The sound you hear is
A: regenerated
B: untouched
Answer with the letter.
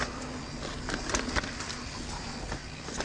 B